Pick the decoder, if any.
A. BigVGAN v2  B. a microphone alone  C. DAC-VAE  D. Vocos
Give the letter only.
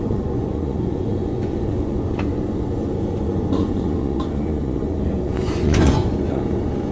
D